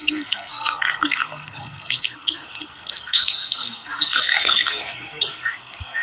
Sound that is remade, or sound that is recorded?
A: remade